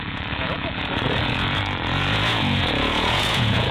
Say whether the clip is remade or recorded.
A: remade